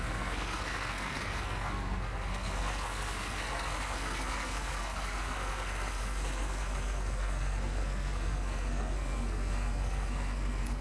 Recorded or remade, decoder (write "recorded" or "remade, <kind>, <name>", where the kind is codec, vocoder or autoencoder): remade, codec, SNAC